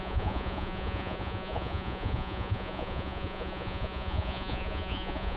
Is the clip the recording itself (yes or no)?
no